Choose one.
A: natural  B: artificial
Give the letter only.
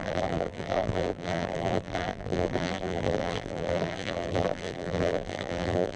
B